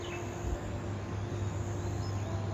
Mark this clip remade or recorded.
recorded